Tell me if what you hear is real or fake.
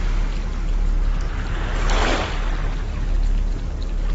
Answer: real